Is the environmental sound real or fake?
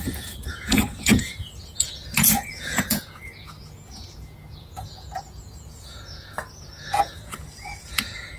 fake